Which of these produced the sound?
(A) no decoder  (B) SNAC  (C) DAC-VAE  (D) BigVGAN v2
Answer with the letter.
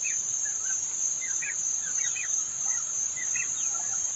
D